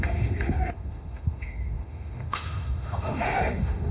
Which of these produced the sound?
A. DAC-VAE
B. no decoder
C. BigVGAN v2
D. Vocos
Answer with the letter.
A